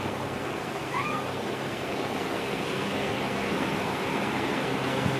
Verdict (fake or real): fake